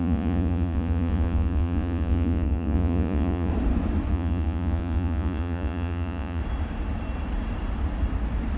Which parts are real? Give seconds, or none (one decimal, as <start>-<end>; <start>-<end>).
3.5-4.1; 6.4-8.6